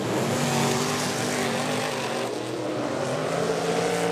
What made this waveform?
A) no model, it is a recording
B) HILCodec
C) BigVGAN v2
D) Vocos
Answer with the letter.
A